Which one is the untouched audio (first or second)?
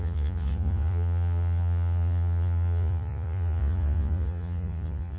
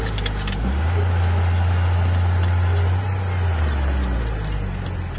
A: second